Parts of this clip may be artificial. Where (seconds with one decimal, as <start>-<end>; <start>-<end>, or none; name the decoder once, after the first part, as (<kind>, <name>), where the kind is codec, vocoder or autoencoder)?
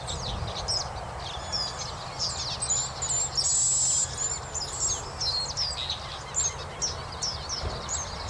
none